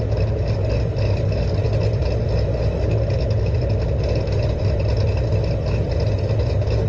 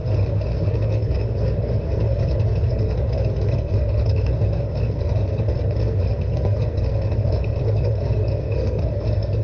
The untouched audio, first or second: first